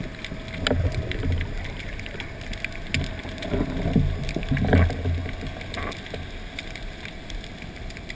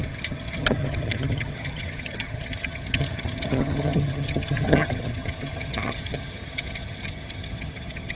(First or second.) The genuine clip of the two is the first